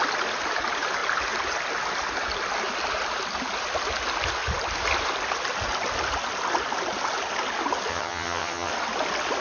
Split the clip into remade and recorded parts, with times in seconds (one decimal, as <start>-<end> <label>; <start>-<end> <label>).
0.0-7.9 recorded; 7.9-8.7 remade; 8.7-9.4 recorded